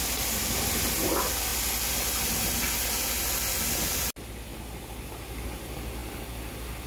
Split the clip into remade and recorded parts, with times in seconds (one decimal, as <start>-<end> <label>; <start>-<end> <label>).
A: 0.0-6.9 recorded